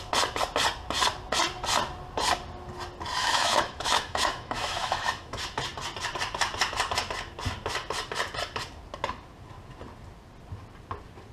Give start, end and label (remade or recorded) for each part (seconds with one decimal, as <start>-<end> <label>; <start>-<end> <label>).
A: 0.0-3.2 recorded; 3.2-5.4 remade; 5.4-11.3 recorded